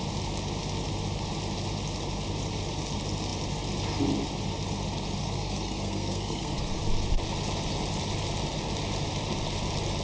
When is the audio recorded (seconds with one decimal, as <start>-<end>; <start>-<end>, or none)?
0.0-5.2; 6.8-10.0